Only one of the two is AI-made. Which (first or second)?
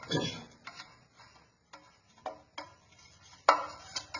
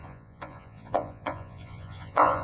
second